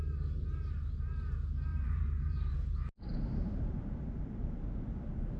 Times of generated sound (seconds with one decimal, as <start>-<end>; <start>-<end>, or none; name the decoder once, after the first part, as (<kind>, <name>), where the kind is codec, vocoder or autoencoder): 1.7-4.9 (vocoder, BigVGAN v2)